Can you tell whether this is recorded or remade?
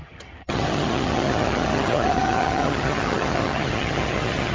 remade